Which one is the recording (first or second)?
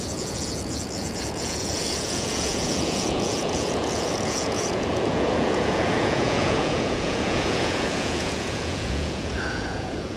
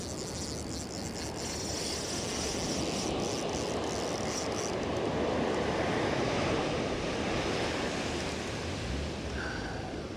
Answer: second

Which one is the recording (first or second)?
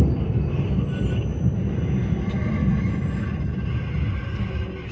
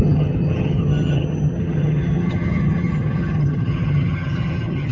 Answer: first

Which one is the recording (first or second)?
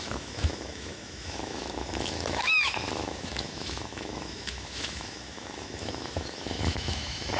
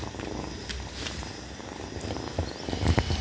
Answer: second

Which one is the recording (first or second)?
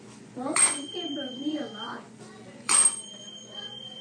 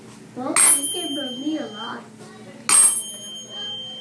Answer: second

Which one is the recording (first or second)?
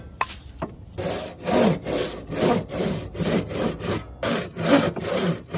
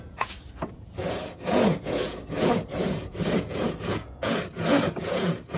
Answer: first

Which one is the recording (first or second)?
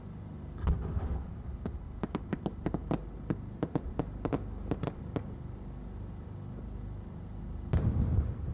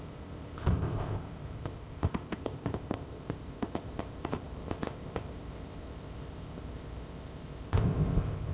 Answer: first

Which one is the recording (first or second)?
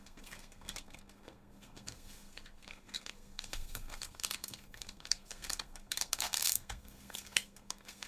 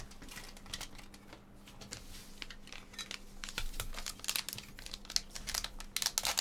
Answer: second